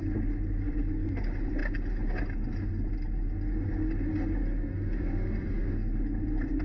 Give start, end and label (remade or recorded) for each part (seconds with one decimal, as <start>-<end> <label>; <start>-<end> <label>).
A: 0.0-6.6 recorded